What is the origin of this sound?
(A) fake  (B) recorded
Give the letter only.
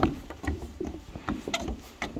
A